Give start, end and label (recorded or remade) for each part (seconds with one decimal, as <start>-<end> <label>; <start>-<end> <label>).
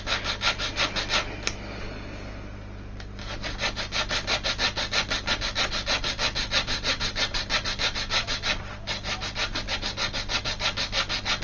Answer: 0.0-11.4 recorded